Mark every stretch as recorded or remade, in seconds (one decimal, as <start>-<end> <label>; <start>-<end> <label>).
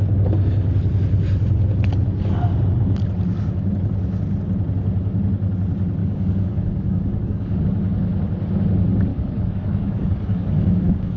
0.0-6.0 recorded; 6.0-7.6 remade; 7.6-9.1 recorded; 9.1-11.2 remade